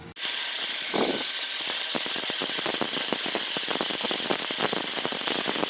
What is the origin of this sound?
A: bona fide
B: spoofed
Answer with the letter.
A